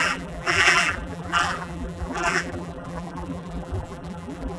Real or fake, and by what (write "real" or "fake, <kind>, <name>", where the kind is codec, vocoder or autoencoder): fake, vocoder, BigVGAN v2